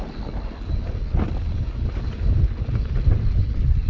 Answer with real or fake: real